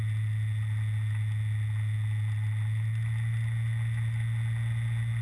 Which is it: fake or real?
real